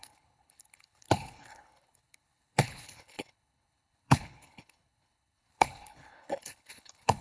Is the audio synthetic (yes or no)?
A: yes